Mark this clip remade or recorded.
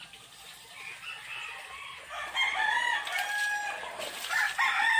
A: recorded